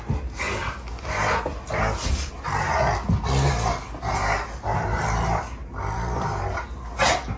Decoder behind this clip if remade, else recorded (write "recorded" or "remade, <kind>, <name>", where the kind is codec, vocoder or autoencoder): recorded